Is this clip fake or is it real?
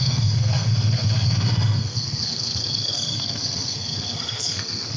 fake